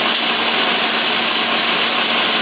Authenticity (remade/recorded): recorded